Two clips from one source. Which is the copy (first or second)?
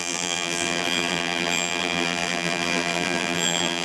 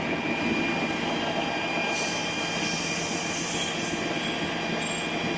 first